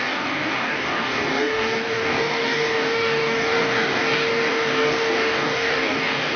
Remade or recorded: remade